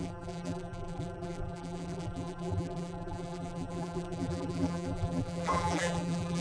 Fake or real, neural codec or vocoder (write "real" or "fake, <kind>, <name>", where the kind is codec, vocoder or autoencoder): fake, vocoder, BigVGAN v2